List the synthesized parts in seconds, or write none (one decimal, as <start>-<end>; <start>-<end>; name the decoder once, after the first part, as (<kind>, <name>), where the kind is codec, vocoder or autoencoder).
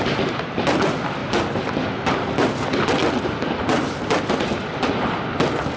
none